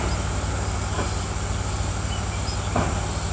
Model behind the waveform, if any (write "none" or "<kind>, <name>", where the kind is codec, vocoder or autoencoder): vocoder, BigVGAN v2